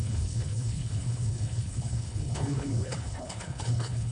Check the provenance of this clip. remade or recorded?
remade